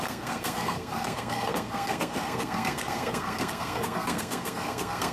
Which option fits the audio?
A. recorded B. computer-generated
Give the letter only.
B